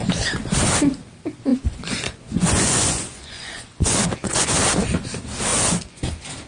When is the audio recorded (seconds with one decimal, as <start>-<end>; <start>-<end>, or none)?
0.0-1.5; 4.5-5.5; 6.0-6.5